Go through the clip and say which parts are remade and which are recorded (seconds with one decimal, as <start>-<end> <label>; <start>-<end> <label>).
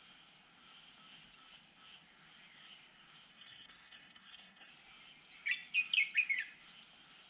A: 0.0-3.3 recorded; 3.3-4.7 remade; 4.7-7.3 recorded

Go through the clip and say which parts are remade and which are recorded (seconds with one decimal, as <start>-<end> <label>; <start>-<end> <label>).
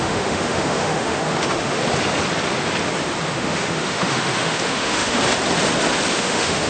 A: 0.0-1.8 remade; 1.8-3.3 recorded; 3.3-5.2 remade; 5.2-6.1 recorded; 6.1-6.7 remade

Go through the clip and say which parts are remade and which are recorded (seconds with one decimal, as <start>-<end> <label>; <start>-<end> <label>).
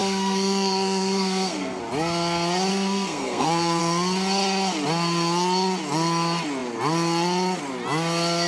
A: 0.0-1.8 remade; 1.8-2.7 recorded; 2.7-3.8 remade; 3.8-8.5 recorded